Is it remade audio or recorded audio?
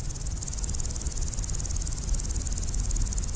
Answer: recorded